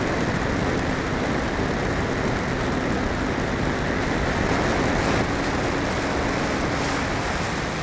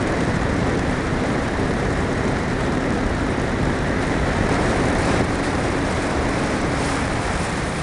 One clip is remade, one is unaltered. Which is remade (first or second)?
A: second